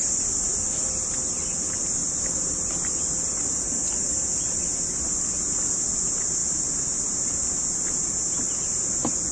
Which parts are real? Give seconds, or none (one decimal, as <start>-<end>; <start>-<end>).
0.0-9.3